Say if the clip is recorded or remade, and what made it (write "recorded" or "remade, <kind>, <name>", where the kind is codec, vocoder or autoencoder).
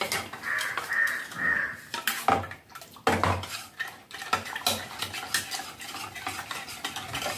recorded